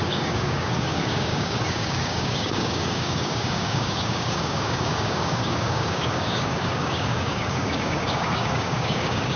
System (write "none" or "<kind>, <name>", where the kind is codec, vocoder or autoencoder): codec, DAC